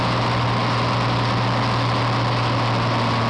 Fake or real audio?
real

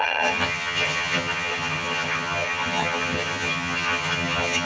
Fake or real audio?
fake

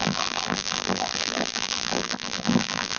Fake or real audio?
fake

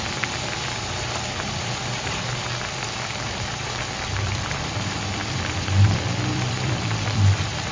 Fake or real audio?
fake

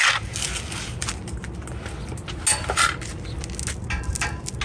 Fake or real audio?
real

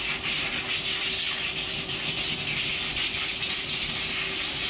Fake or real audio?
real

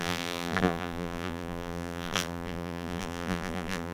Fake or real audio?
fake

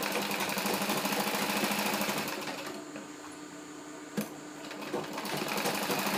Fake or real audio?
fake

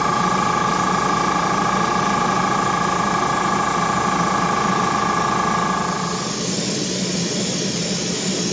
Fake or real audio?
real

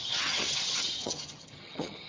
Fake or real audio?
fake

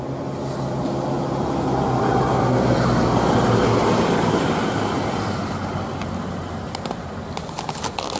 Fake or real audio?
real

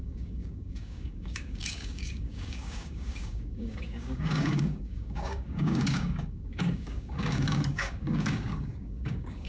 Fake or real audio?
fake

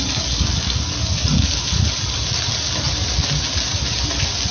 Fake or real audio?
real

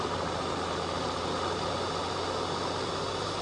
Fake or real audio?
real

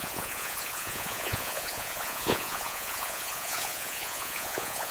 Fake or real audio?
fake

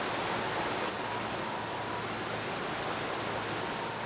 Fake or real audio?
real